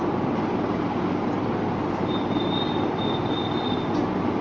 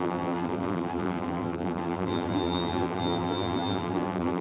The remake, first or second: second